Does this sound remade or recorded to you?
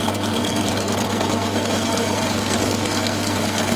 remade